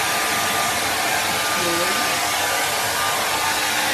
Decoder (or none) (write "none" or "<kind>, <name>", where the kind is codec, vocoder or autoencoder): none